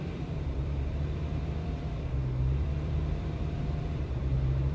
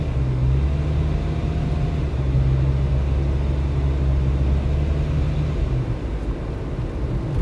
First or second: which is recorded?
second